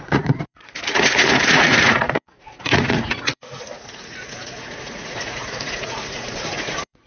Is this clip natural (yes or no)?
no